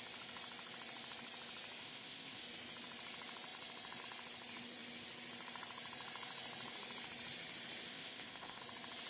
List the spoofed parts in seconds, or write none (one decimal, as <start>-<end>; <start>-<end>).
1.8-2.4; 7.9-8.6